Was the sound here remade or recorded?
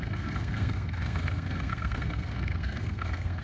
remade